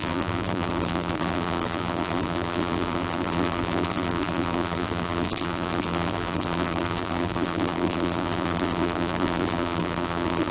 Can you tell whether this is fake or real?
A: fake